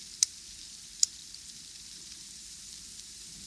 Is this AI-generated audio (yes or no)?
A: yes